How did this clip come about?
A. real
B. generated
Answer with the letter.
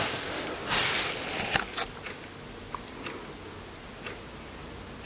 A